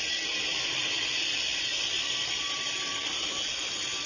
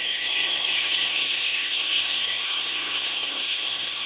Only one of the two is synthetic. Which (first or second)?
second